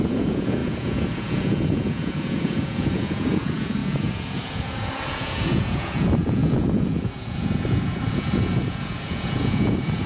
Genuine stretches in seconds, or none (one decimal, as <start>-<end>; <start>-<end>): none